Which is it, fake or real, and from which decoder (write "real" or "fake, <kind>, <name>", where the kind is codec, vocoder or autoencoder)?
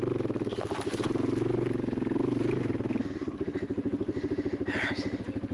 real